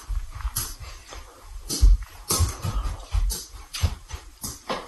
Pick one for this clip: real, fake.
fake